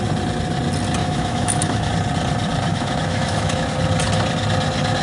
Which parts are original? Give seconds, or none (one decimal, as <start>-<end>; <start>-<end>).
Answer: 0.0-1.0; 1.9-2.7; 3.7-5.0